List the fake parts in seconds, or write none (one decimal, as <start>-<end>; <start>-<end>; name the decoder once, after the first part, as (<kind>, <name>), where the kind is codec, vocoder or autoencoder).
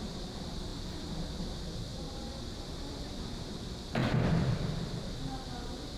none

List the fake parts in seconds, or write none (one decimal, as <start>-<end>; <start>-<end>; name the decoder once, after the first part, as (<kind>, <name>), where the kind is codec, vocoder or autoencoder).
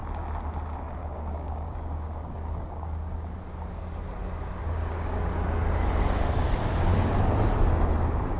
1.0-3.1 (codec, DAC); 4.6-5.2; 6.6-7.1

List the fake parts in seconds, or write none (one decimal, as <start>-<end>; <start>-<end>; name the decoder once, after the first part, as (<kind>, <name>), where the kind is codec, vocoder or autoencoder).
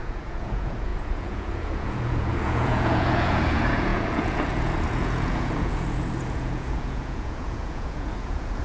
0.0-8.6 (vocoder, Vocos)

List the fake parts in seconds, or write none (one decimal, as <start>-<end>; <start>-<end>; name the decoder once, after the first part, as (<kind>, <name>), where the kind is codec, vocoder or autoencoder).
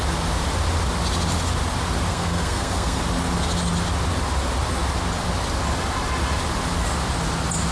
2.1-3.0 (codec, SNAC)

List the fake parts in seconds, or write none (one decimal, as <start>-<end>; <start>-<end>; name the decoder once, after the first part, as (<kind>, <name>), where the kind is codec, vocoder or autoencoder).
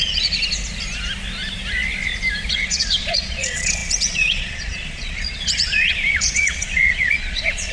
0.0-0.4 (vocoder, Vocos); 2.5-7.7